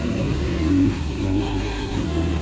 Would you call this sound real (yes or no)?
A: no